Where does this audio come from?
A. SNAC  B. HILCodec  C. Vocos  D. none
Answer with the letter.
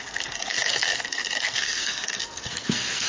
A